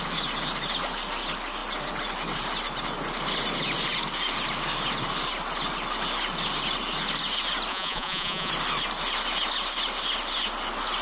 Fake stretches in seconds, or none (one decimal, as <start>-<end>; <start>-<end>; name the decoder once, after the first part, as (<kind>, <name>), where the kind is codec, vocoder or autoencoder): 7.7-8.5 (vocoder, Vocos)

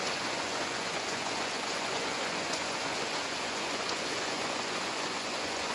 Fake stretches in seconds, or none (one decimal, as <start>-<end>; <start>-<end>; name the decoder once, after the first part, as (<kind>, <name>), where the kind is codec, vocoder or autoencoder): 0.0-5.7 (vocoder, Vocos)

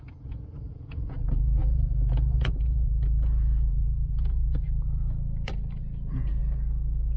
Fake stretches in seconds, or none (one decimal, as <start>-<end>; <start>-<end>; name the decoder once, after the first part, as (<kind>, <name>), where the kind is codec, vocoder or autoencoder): 0.0-6.4 (vocoder, Vocos)

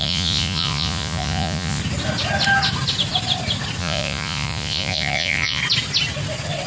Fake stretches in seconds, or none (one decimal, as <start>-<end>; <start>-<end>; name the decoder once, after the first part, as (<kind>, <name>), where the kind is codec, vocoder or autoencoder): 0.0-1.8 (vocoder, Vocos); 3.8-5.6

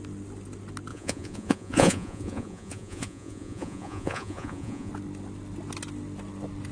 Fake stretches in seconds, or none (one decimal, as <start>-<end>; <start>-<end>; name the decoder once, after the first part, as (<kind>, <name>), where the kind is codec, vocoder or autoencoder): 0.9-4.9 (vocoder, Vocos)